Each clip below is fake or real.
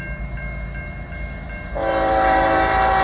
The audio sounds real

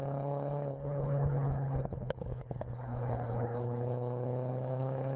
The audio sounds fake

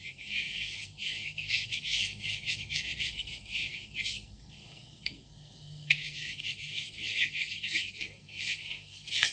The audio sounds fake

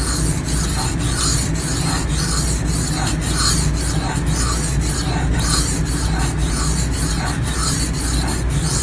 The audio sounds real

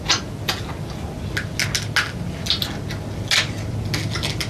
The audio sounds real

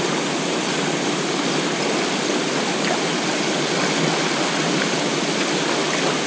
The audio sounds real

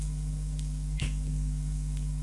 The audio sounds fake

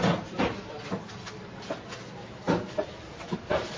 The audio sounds real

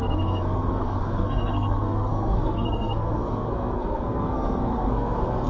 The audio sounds fake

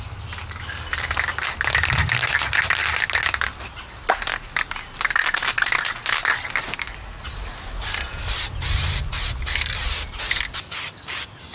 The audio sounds real